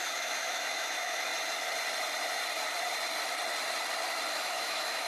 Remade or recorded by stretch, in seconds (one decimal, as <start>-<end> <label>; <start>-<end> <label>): 0.0-1.3 remade; 1.3-4.3 recorded; 4.3-5.1 remade

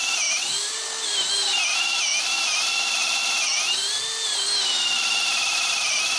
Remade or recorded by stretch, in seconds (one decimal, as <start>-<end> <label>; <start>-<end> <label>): 0.0-6.2 recorded

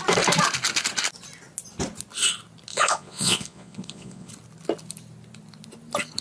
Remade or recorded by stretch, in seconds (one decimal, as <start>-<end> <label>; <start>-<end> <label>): 0.0-2.7 recorded; 2.7-4.3 remade; 4.3-6.2 recorded

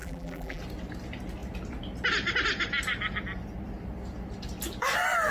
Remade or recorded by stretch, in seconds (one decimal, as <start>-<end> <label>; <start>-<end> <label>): 0.0-0.6 remade; 0.6-5.3 recorded

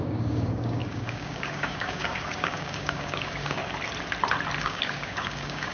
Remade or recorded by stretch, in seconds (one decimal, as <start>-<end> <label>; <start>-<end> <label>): 0.0-3.6 remade; 3.6-4.6 recorded; 4.6-5.7 remade

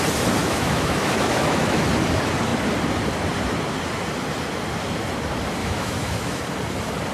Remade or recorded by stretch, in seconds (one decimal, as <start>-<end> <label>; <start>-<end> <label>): 0.0-0.4 recorded; 0.4-1.9 remade; 1.9-5.6 recorded; 5.6-6.4 remade; 6.4-7.1 recorded

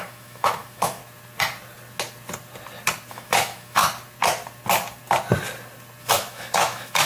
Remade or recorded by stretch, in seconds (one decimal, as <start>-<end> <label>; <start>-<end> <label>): 0.0-1.0 remade; 1.0-3.1 recorded; 3.1-3.8 remade; 3.8-6.0 recorded; 6.0-7.1 remade

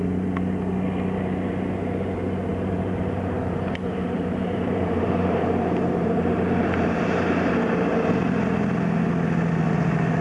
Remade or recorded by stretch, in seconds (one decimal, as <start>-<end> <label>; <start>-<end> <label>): 0.0-2.5 recorded; 2.5-7.5 remade; 7.5-10.2 recorded